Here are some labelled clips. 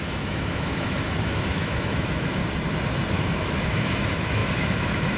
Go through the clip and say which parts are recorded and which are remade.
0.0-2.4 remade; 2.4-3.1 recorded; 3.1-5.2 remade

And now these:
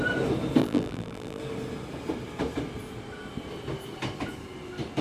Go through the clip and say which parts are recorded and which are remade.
0.0-0.6 recorded; 0.6-1.4 remade; 1.4-5.0 recorded

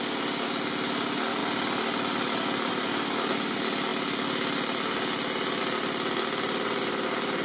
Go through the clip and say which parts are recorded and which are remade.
0.0-7.4 recorded